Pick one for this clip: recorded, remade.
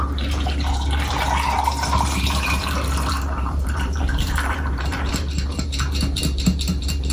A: remade